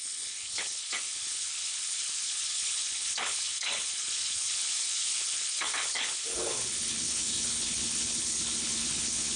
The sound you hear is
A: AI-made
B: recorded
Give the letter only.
A